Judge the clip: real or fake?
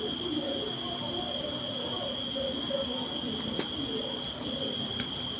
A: real